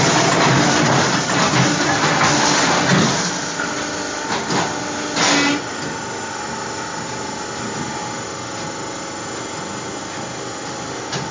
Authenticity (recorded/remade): recorded